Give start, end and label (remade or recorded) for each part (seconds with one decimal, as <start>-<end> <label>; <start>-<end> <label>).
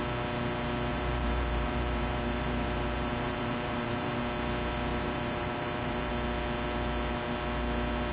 0.0-0.9 recorded; 0.9-4.2 remade; 4.2-4.9 recorded; 4.9-6.1 remade; 6.1-8.1 recorded